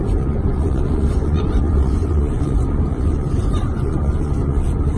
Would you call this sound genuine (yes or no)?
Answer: no